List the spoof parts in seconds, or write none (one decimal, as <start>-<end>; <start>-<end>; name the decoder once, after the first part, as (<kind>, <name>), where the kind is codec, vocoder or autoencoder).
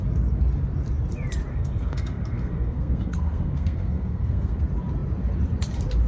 1.5-4.6 (codec, SNAC)